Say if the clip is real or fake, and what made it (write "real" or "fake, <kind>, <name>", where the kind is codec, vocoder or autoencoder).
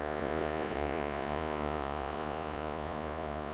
fake, vocoder, Vocos